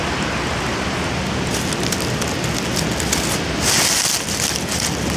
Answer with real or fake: real